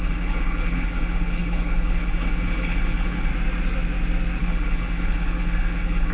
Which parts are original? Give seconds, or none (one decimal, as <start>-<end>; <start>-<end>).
3.3-4.4